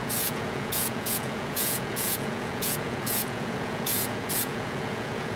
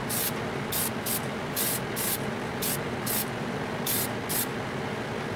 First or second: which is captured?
second